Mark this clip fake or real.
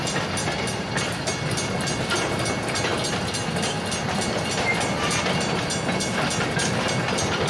real